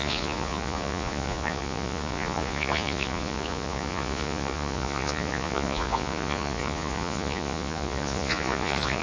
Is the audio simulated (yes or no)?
yes